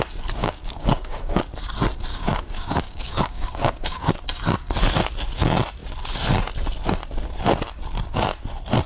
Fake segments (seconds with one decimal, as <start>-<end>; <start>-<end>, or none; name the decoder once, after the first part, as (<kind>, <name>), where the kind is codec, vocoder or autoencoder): 0.4-1.4 (codec, DAC); 2.1-4.1